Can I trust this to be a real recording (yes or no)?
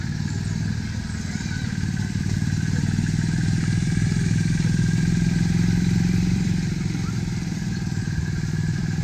no